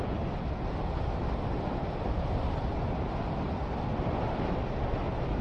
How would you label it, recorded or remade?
recorded